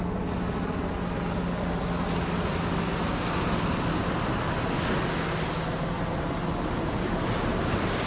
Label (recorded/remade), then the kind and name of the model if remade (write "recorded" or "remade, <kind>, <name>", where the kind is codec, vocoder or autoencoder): recorded